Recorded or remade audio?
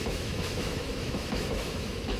remade